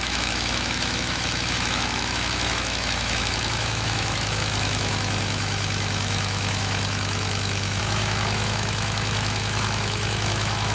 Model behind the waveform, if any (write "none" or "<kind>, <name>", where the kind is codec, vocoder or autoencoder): autoencoder, DAC-VAE